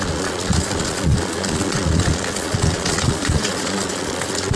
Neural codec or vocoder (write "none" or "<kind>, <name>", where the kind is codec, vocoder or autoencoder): vocoder, Vocos